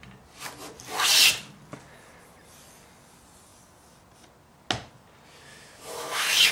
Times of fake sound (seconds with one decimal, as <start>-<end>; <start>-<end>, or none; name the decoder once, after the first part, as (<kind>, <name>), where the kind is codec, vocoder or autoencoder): 5.5-6.5 (autoencoder, DAC-VAE)